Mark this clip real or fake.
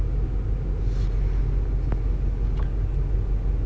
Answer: real